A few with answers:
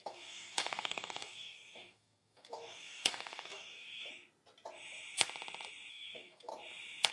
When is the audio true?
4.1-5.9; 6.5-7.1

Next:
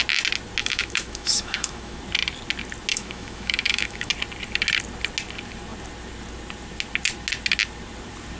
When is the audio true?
0.0-0.6; 2.0-2.9; 4.1-8.4

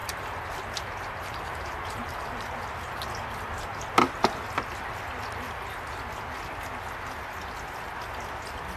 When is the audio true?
2.6-8.8

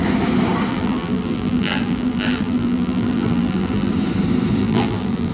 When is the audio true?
0.0-0.7; 3.9-4.6

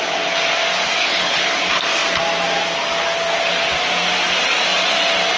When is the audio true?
0.0-1.0; 1.6-5.4

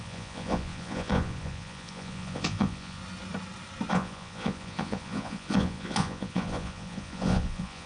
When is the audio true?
3.0-3.9

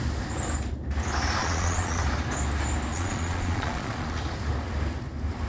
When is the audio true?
0.0-1.4; 2.0-2.9; 4.2-5.5

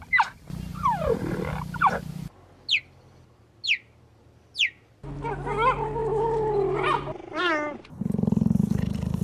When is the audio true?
0.0-9.2